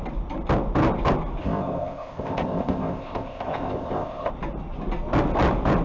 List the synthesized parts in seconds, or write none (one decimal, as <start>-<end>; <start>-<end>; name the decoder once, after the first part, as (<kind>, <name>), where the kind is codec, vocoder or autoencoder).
1.4-4.3 (codec, ZipCodec)